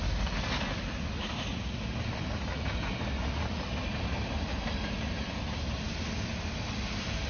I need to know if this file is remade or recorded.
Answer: recorded